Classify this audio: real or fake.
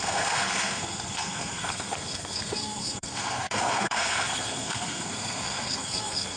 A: fake